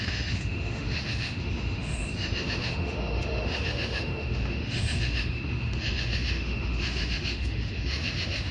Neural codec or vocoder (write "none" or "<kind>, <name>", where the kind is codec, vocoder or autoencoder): autoencoder, DAC-VAE